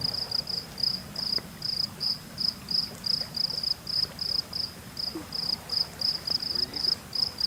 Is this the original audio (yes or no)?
no